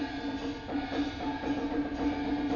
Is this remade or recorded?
recorded